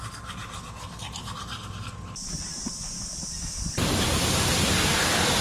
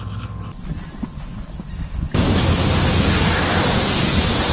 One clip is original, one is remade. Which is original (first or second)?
second